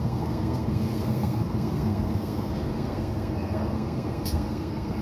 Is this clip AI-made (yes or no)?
yes